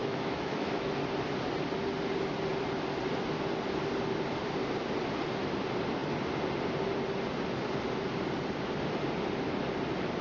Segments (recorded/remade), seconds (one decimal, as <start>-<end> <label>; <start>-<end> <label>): 0.0-0.9 remade; 0.9-10.2 recorded